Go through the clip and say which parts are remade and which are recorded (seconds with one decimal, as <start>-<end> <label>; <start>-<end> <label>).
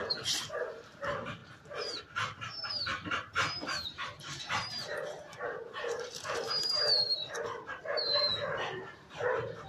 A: 0.0-9.7 remade